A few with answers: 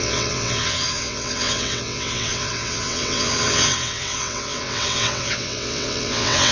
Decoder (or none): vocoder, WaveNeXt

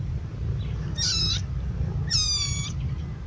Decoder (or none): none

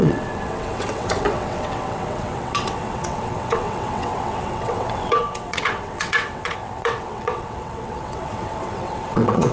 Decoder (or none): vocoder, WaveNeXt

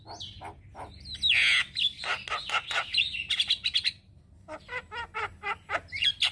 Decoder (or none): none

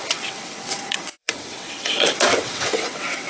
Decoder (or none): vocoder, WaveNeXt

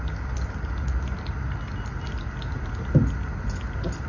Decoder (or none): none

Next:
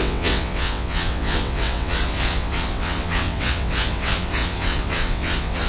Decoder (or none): vocoder, WaveNeXt